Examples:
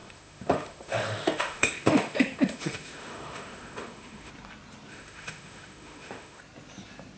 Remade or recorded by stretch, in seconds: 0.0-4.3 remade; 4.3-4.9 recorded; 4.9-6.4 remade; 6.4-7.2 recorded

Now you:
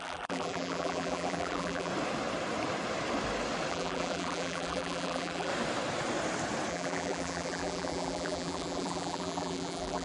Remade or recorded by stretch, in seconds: 0.0-1.9 remade; 1.9-3.7 recorded; 3.7-5.5 remade; 5.5-6.7 recorded; 6.7-10.0 remade

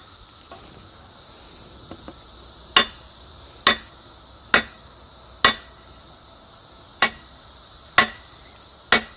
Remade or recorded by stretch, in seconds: 0.0-6.9 recorded; 6.9-7.7 remade; 7.7-9.2 recorded

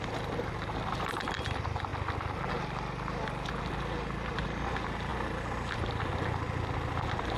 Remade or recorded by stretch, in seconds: 0.0-7.4 recorded

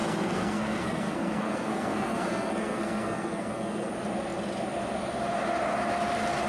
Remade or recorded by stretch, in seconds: 0.0-3.9 remade; 3.9-6.5 recorded

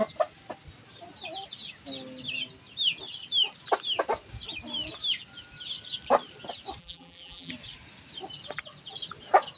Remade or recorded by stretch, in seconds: 0.0-6.8 recorded; 6.8-7.5 remade; 7.5-9.6 recorded

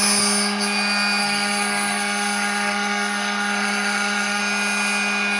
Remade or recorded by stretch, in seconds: 0.0-1.2 recorded; 1.2-4.4 remade; 4.4-5.4 recorded